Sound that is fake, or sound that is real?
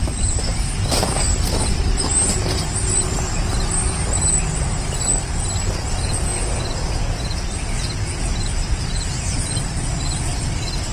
real